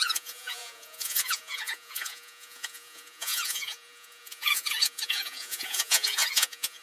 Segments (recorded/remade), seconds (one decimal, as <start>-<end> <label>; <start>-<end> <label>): 0.0-6.8 remade